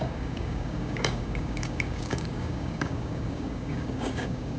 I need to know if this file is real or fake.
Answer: fake